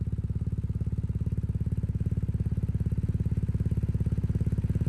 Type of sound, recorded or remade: recorded